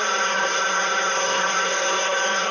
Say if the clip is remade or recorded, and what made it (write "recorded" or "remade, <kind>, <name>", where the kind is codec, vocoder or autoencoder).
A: remade, codec, SNAC